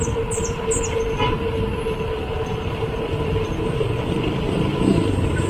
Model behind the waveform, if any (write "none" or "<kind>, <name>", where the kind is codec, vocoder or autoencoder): none